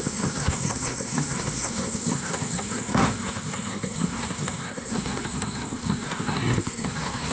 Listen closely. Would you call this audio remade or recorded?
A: remade